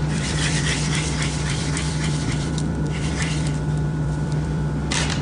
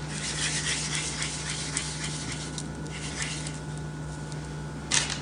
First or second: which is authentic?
second